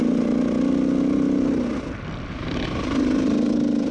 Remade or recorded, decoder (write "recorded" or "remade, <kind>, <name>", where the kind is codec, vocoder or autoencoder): recorded